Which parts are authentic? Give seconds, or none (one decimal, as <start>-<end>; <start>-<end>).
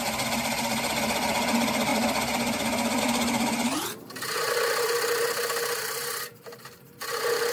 0.0-7.5